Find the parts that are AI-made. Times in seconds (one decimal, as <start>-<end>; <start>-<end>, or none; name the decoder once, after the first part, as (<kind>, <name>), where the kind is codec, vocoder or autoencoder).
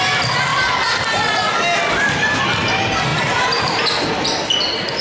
none